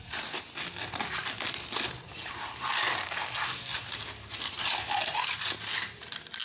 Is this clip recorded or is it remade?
recorded